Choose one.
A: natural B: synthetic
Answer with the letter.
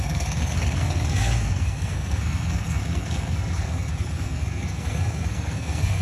B